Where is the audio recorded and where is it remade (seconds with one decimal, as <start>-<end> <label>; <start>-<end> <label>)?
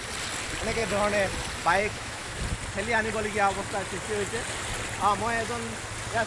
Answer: 0.0-1.8 recorded; 1.8-2.4 remade; 2.4-6.3 recorded